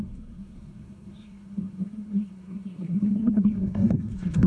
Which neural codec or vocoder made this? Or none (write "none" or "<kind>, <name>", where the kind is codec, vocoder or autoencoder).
codec, SNAC